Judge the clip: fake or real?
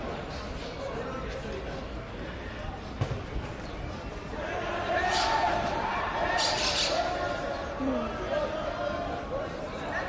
real